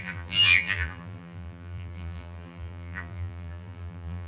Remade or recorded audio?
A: remade